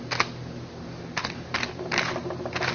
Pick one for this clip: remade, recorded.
recorded